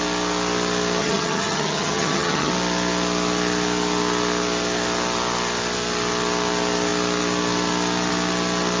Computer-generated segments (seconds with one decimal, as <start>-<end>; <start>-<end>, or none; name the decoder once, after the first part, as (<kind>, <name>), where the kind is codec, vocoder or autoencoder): 1.0-2.5 (vocoder, HiFi-GAN)